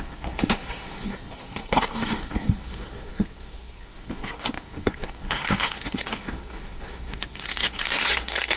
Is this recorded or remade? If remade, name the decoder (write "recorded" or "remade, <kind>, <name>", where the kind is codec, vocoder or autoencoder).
remade, codec, SNAC